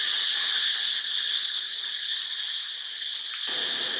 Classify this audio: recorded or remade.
recorded